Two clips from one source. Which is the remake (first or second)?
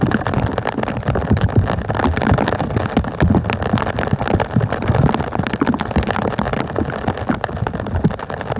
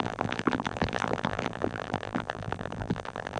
second